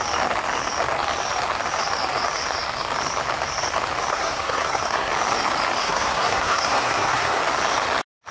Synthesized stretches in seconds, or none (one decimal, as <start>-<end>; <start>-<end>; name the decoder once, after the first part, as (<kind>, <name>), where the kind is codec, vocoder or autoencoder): 4.1-5.1 (codec, SNAC); 5.8-7.4